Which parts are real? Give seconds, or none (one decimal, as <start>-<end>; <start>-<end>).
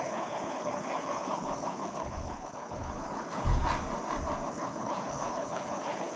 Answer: 3.6-4.5